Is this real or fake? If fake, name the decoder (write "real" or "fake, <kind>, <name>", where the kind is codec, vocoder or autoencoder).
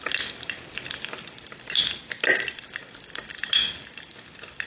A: real